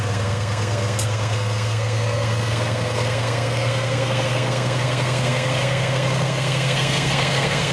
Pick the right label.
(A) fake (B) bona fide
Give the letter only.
A